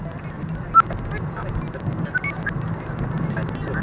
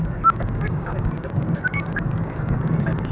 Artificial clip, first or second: second